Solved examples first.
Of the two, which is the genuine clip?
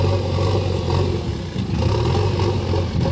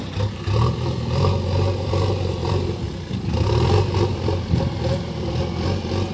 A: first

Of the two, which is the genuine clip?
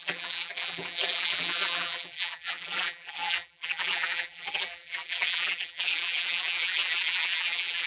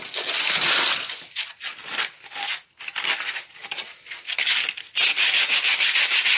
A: second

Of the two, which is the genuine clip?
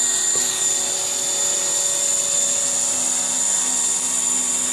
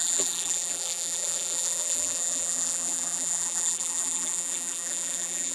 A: first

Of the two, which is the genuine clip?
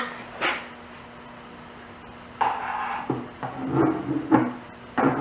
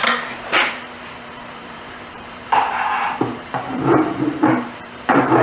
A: first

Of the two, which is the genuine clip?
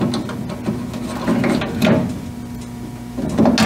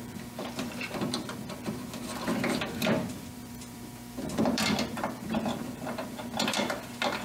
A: first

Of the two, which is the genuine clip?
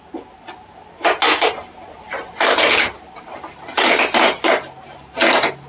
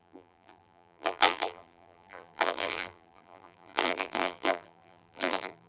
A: first